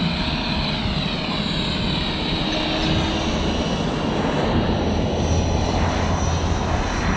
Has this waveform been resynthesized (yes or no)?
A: no